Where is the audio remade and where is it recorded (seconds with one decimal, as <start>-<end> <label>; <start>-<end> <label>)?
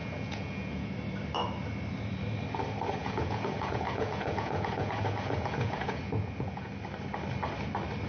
0.0-0.9 remade; 0.9-3.0 recorded; 3.0-6.7 remade; 6.7-8.1 recorded